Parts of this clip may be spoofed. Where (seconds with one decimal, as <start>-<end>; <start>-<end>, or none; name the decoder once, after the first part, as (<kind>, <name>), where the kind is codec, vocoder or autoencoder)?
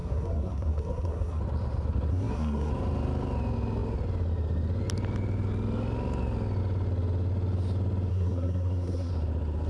0.0-1.4 (codec, SNAC); 2.1-2.7; 8.1-9.1